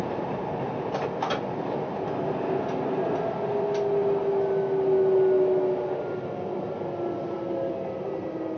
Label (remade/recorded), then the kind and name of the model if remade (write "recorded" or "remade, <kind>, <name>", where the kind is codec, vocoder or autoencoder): recorded